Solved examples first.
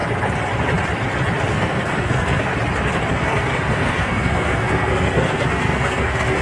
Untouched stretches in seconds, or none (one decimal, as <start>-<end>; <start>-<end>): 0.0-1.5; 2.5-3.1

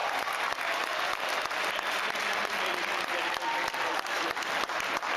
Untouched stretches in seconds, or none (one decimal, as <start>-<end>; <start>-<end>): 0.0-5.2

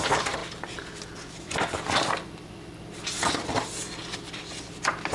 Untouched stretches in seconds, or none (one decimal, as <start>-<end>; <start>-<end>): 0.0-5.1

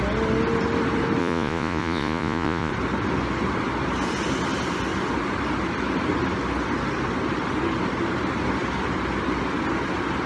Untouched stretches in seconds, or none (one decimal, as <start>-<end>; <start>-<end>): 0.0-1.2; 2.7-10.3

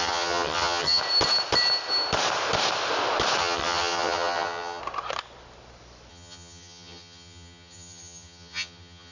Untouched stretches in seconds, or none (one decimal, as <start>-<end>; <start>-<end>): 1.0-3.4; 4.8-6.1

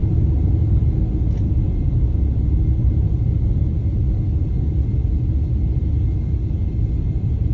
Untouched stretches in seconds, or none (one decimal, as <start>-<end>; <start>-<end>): 0.0-7.5

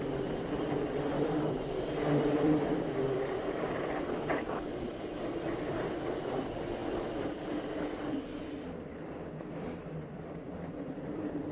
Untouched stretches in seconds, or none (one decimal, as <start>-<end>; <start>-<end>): none

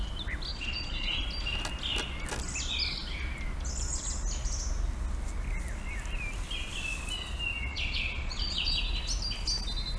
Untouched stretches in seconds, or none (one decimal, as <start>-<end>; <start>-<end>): 0.0-0.5; 1.2-7.7; 8.8-10.0